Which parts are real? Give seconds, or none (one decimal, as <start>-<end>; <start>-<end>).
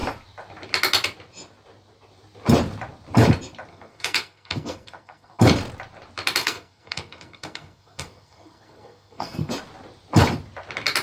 0.0-3.7; 5.4-6.4; 9.5-11.0